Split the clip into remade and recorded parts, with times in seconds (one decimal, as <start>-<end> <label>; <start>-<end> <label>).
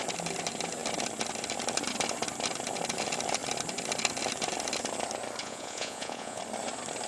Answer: 0.0-5.4 recorded; 5.4-6.4 remade; 6.4-7.1 recorded